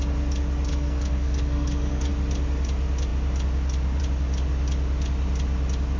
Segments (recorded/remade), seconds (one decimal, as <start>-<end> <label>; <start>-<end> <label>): 0.0-0.7 recorded; 0.7-2.1 remade; 2.1-6.0 recorded